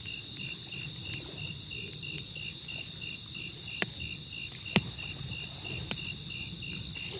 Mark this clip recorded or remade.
recorded